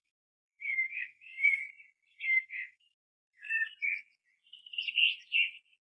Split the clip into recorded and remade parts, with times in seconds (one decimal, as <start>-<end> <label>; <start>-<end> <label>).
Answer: 0.0-1.6 remade; 1.6-2.1 recorded; 2.1-3.5 remade; 3.5-6.0 recorded